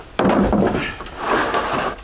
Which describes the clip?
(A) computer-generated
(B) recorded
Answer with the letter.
B